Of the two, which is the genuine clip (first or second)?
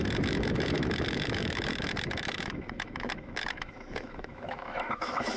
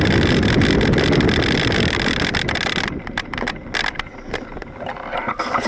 second